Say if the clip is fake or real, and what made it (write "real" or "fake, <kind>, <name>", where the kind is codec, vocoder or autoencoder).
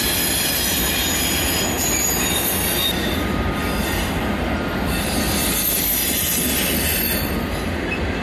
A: real